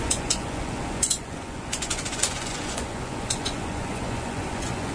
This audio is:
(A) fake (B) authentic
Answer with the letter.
A